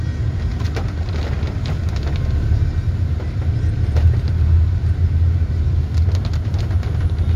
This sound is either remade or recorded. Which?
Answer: recorded